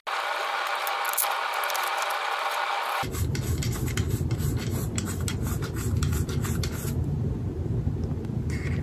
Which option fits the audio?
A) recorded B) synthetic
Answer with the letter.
A